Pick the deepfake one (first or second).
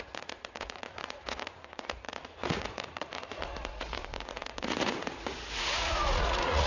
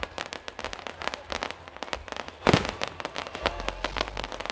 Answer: first